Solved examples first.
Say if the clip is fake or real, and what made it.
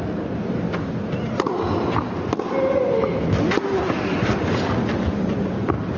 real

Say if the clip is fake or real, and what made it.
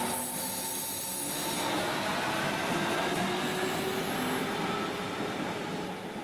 real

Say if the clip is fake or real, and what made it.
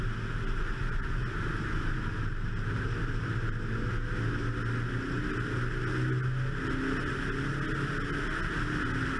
real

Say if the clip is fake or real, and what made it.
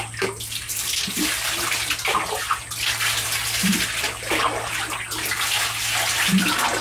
real